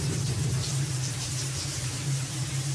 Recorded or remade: remade